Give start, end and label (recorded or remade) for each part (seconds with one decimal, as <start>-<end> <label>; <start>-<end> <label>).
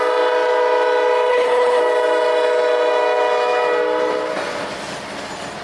0.0-1.3 recorded; 1.3-1.8 remade; 1.8-5.6 recorded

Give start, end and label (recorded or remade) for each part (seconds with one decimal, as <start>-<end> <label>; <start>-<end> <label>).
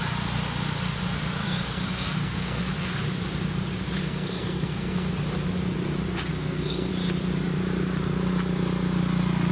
0.0-1.4 recorded; 1.4-2.6 remade; 2.6-4.0 recorded; 4.0-5.1 remade; 5.1-6.3 recorded; 6.3-6.9 remade; 6.9-9.5 recorded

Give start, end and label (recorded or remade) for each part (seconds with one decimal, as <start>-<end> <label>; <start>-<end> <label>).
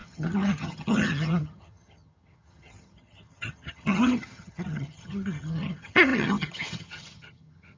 0.0-7.8 remade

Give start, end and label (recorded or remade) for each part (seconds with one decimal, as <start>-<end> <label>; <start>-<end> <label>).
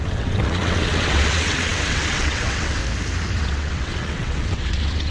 0.0-2.8 remade; 2.8-3.4 recorded; 3.4-5.1 remade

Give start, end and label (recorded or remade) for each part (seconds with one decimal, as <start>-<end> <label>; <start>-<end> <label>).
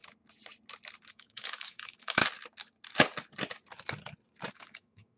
0.0-1.1 recorded; 1.1-2.2 remade; 2.2-4.5 recorded; 4.5-5.2 remade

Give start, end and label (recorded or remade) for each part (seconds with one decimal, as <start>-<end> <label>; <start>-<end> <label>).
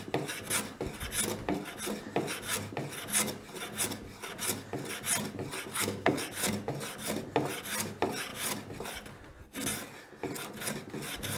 0.0-5.7 recorded; 5.7-6.2 remade; 6.2-11.4 recorded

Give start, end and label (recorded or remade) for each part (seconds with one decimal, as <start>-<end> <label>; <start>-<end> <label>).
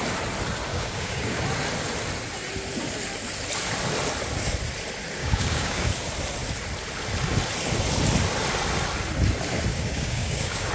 0.0-0.7 recorded; 0.7-1.4 remade; 1.4-5.2 recorded; 5.2-5.9 remade; 5.9-9.7 recorded; 9.7-10.7 remade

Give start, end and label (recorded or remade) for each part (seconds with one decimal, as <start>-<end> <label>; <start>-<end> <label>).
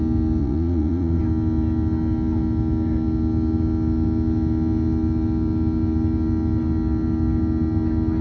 0.0-0.4 recorded; 0.4-1.2 remade; 1.2-8.2 recorded